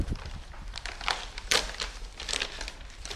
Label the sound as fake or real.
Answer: fake